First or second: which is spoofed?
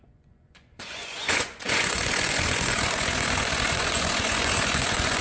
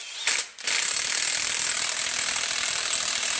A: first